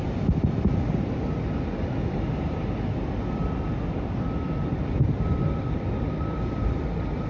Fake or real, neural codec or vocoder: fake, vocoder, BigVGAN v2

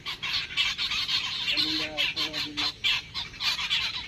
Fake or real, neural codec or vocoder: fake, vocoder, BigVGAN v2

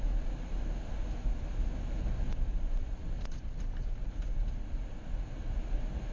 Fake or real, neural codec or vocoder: real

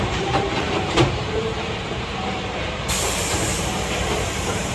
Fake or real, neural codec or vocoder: fake, vocoder, BigVGAN v2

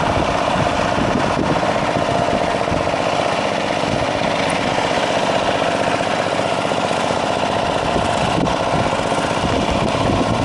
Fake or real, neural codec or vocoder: real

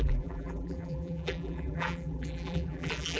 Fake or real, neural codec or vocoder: fake, vocoder, BigVGAN v2